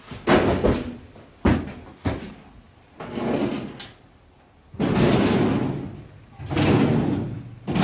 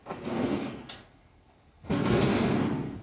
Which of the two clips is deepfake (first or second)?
second